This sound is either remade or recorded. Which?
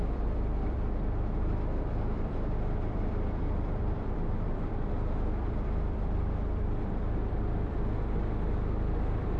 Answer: remade